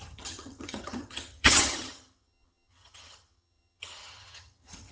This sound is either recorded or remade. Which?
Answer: remade